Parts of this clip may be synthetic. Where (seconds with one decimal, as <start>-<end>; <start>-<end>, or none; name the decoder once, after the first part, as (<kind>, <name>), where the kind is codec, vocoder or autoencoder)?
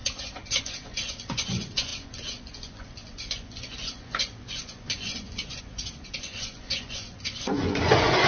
0.6-8.3 (vocoder, Vocos)